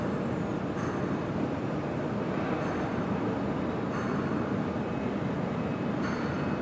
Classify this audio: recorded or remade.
recorded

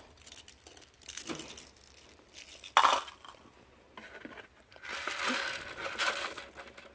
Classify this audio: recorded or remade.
recorded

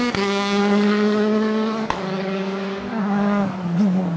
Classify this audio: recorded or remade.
remade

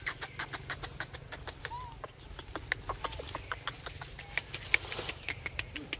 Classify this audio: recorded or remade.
recorded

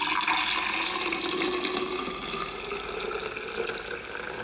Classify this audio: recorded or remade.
recorded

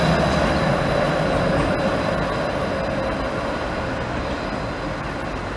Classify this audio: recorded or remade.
recorded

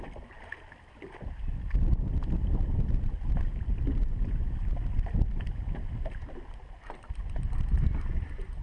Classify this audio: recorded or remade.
remade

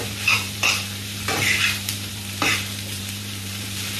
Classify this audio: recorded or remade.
remade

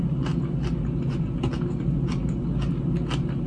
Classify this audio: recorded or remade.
recorded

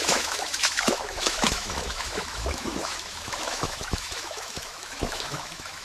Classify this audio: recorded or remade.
remade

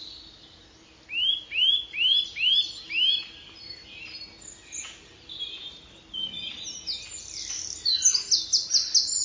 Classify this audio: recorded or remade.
recorded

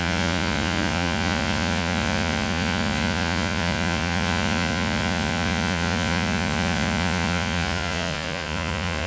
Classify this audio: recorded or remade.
remade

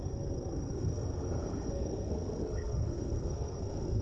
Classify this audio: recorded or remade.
remade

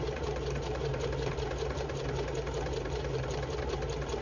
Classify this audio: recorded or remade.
remade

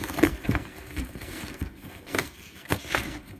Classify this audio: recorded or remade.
remade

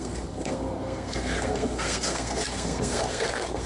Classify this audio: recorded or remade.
remade